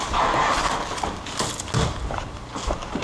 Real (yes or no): yes